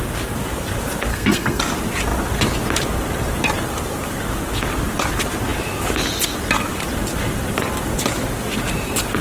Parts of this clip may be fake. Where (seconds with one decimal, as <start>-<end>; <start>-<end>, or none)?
1.1-1.6